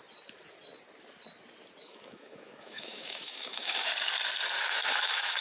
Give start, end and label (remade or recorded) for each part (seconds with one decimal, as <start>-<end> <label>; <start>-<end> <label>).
0.0-1.8 recorded; 1.8-3.9 remade; 3.9-4.6 recorded; 4.6-5.4 remade